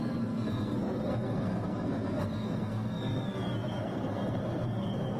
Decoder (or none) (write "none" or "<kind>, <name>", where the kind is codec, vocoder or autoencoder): codec, SNAC